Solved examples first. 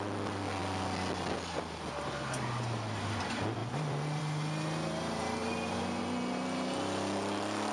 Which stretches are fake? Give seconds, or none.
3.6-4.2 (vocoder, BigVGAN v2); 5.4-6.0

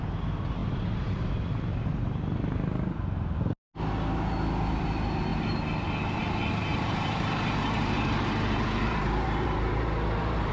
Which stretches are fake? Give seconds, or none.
0.6-1.3 (vocoder, BigVGAN v2); 6.7-10.5

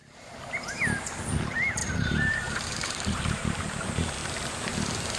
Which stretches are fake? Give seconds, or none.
1.8-3.7 (vocoder, BigVGAN v2)

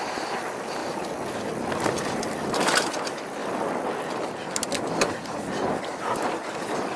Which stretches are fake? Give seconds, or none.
none

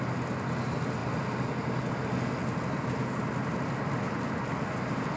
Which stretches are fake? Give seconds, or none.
none

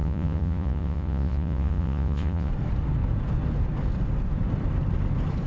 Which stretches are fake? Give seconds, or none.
0.0-2.5 (vocoder, Vocos)

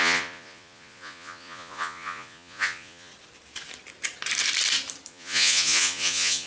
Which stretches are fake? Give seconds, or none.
0.0-3.1 (vocoder, Vocos); 5.1-6.5